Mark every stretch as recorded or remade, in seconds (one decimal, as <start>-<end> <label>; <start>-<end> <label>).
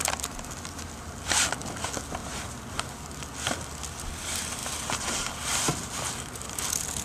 0.0-7.0 recorded